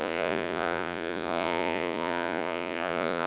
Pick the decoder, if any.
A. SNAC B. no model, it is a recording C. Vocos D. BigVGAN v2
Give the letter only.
C